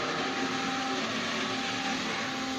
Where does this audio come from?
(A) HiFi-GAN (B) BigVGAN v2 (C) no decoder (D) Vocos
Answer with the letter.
C